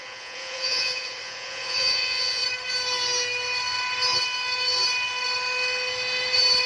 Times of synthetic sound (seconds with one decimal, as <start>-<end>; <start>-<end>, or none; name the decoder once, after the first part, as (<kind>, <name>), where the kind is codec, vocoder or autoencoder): 0.0-2.4 (vocoder, Vocos)